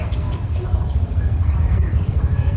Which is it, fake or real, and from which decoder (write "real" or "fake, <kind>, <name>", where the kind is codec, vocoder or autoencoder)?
fake, codec, SNAC